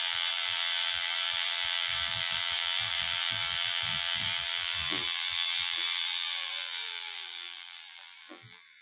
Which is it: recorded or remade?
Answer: remade